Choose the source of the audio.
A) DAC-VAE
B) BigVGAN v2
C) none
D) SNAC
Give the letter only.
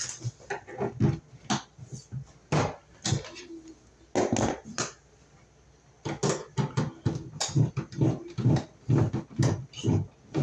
C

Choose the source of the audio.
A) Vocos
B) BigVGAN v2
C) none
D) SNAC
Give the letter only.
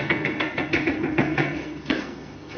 D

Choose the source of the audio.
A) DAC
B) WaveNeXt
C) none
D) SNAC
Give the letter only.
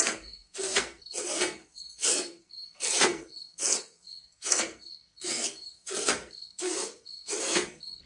D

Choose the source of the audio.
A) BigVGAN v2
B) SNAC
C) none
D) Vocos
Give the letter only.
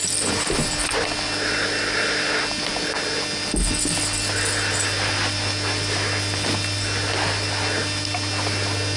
C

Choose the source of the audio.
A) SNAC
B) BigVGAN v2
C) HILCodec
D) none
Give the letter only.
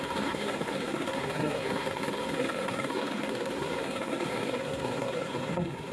A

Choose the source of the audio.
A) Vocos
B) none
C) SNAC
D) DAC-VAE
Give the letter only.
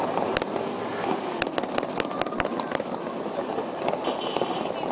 B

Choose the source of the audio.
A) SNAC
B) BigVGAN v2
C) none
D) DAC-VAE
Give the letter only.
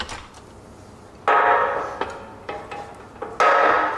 C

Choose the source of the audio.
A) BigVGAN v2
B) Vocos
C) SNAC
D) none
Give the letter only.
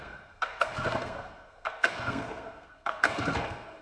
C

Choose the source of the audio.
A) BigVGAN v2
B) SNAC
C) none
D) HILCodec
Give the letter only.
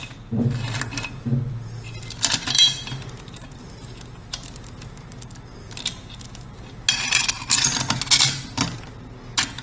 C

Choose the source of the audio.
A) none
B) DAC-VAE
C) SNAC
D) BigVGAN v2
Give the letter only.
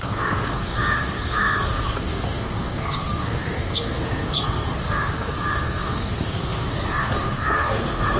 C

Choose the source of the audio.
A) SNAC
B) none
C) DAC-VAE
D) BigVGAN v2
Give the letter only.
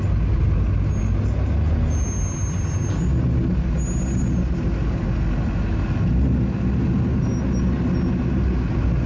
B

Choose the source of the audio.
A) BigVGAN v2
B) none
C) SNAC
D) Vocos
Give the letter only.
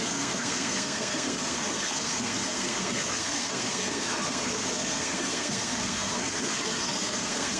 C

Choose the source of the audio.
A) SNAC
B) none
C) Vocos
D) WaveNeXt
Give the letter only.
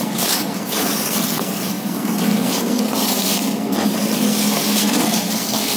A